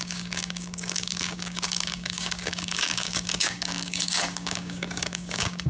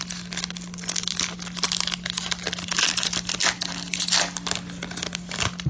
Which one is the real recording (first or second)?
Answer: second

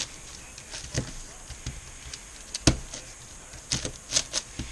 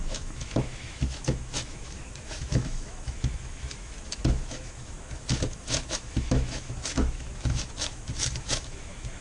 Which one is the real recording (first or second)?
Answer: first